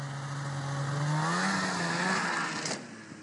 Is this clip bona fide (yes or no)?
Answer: yes